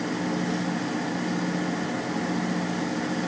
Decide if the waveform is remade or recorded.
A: recorded